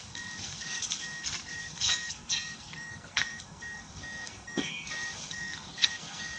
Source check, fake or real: fake